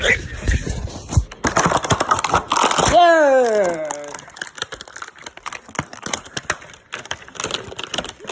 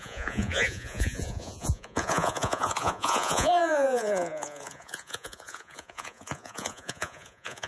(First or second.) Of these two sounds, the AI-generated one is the second